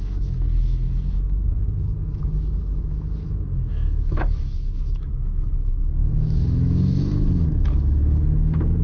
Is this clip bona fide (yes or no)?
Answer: no